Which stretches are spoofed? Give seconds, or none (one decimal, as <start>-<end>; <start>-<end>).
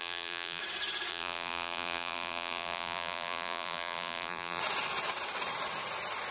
0.0-0.6; 1.1-4.6